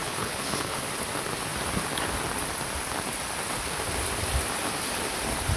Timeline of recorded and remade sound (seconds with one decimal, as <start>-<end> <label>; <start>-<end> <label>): 0.0-0.8 remade; 0.8-5.6 recorded